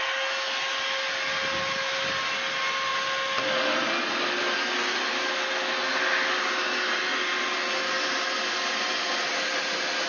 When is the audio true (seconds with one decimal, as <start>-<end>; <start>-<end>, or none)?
0.0-10.1